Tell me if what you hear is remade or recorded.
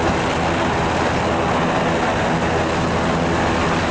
recorded